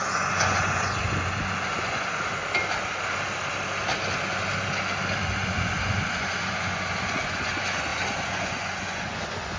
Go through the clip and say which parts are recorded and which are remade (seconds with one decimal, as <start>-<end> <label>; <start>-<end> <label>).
0.0-2.4 remade; 2.4-5.2 recorded; 5.2-9.6 remade